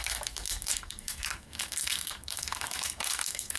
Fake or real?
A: fake